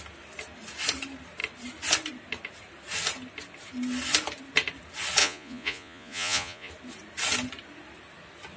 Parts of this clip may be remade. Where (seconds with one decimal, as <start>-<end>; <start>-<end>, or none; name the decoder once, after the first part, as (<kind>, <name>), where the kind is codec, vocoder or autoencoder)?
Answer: 5.2-6.7 (vocoder, Vocos)